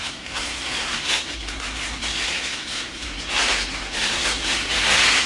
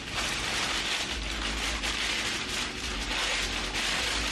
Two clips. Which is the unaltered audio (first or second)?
second